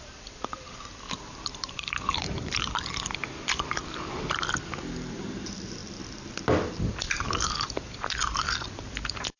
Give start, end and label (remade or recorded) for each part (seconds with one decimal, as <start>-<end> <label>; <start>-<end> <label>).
0.0-5.8 remade; 5.8-6.8 recorded; 6.8-9.4 remade